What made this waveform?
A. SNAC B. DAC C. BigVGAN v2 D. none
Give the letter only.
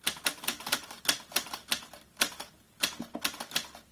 D